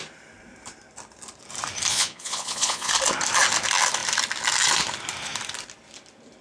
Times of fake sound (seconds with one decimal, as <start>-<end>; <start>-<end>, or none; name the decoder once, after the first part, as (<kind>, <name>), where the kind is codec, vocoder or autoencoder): 1.9-2.9 (vocoder, Vocos)